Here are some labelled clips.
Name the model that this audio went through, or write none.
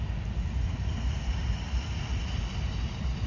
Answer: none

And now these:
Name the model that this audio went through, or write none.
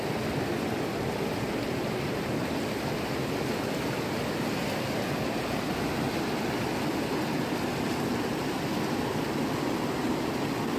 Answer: none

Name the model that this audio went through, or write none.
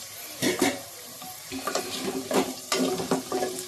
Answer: vocoder, BigVGAN v2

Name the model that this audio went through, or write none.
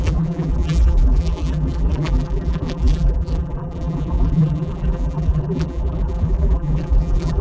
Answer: vocoder, BigVGAN v2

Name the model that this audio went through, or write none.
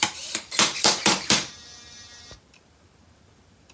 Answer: vocoder, BigVGAN v2